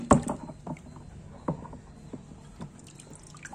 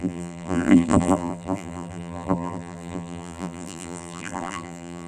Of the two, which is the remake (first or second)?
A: second